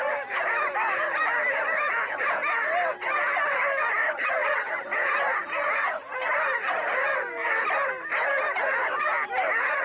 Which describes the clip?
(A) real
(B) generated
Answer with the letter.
A